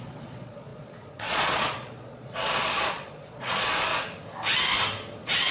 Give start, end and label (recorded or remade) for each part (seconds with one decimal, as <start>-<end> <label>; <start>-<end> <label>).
0.0-3.9 remade; 3.9-5.5 recorded